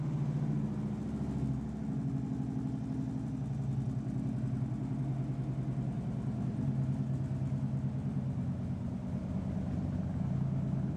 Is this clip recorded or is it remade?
recorded